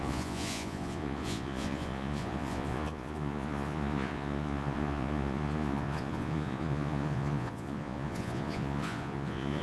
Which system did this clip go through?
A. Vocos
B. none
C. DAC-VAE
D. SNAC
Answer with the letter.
A